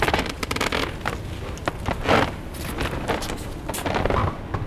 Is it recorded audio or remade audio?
recorded